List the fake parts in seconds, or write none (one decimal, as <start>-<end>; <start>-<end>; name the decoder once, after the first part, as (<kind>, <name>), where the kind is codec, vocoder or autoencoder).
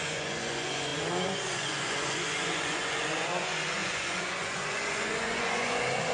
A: 0.0-6.1 (vocoder, Vocos)